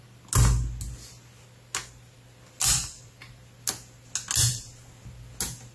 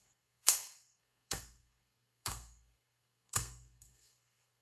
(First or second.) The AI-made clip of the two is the second